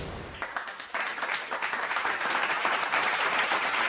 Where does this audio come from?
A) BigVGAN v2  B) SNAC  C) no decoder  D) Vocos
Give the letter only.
A